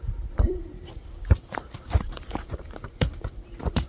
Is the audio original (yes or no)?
no